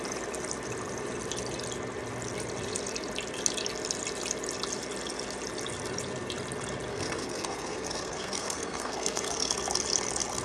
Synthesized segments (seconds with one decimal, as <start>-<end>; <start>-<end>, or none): 6.9-9.5